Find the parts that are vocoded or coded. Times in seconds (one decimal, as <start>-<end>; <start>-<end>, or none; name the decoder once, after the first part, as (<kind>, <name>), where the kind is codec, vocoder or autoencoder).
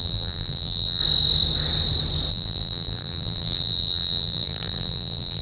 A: 0.0-1.0 (vocoder, BigVGAN v2); 2.3-5.4